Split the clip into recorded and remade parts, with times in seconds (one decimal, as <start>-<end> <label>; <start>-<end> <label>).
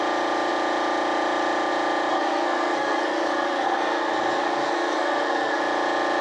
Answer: 0.0-2.1 recorded; 2.1-5.6 remade; 5.6-6.2 recorded